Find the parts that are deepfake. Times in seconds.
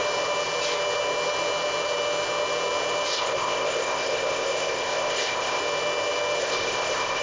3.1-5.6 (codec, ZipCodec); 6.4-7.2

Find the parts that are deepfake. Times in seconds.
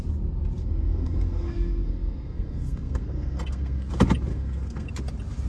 0.6-3.9 (codec, SNAC); 4.3-4.9